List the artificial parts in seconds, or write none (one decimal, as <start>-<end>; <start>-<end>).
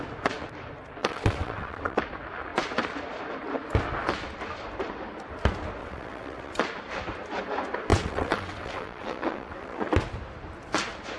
1.0-2.0; 5.8-6.5; 7.9-9.9